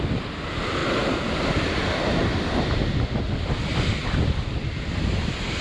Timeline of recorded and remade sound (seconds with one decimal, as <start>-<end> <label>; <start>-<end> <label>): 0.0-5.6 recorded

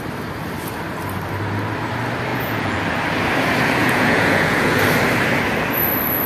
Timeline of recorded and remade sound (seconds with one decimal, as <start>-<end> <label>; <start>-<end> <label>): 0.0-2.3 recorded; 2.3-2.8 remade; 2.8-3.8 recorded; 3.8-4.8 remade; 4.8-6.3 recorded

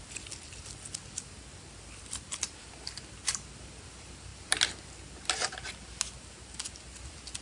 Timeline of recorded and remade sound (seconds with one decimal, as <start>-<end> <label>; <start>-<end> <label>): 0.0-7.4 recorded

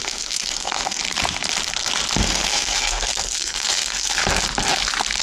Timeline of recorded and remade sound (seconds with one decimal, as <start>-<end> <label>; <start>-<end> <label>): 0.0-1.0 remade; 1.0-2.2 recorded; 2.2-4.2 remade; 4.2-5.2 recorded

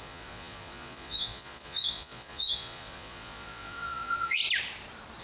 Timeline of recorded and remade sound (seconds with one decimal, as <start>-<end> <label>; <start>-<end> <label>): 0.0-4.4 remade; 4.4-5.2 recorded